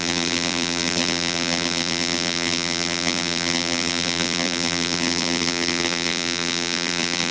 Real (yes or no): no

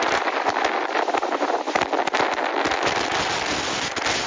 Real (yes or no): no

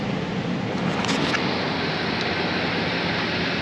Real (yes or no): yes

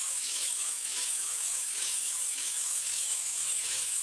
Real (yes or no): no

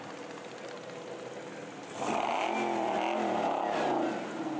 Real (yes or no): yes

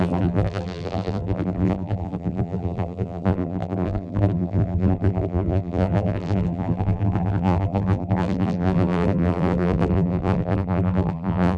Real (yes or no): no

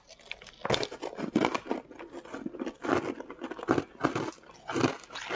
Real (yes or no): yes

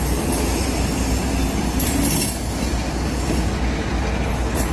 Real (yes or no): yes